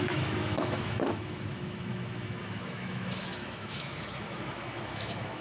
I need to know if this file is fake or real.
fake